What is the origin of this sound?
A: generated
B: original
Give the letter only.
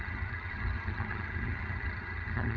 A